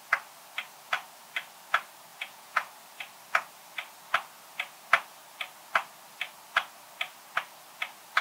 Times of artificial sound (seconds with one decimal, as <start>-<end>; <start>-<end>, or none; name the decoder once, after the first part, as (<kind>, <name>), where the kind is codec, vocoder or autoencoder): 2.1-2.7 (vocoder, Vocos)